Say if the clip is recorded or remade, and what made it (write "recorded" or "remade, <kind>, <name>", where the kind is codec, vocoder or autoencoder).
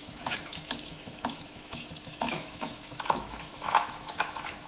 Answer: remade, autoencoder, DAC-VAE